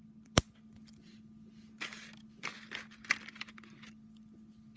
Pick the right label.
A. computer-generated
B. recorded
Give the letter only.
B